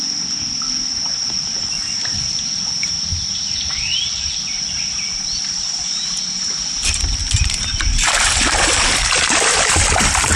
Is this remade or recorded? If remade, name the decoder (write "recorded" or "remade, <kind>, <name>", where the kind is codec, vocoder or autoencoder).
remade, vocoder, BigVGAN v2